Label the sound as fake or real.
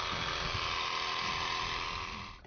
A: real